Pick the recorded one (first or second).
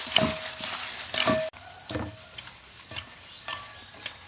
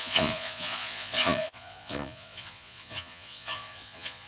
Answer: first